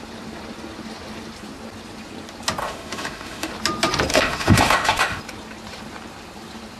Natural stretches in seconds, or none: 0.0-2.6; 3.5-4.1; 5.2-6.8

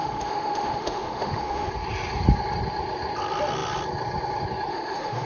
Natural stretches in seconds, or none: 1.7-4.7

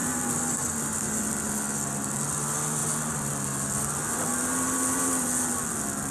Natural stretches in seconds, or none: 0.0-6.1